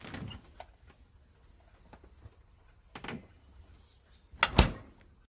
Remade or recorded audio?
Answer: recorded